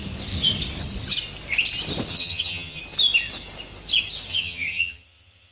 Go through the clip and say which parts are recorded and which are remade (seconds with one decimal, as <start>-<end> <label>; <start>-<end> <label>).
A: 0.0-2.1 recorded; 2.1-2.8 remade; 2.8-4.3 recorded; 4.3-5.5 remade